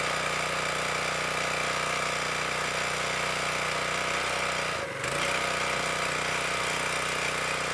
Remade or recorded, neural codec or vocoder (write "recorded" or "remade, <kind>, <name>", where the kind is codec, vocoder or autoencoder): recorded